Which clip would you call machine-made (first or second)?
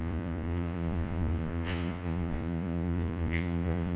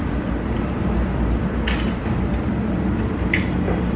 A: first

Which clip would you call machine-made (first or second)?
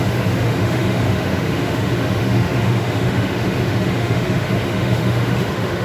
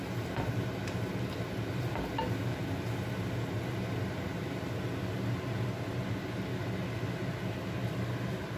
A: first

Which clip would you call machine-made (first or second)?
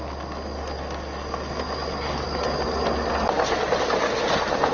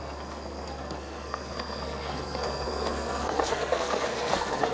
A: second